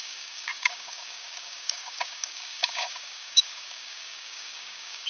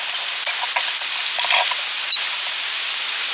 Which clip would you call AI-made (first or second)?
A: first